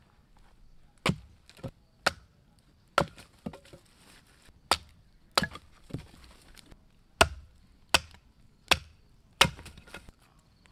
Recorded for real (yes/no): yes